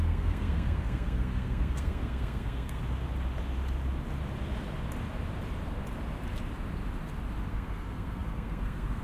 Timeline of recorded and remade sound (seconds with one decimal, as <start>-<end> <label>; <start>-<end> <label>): 0.0-2.8 remade; 2.8-7.5 recorded; 7.5-9.0 remade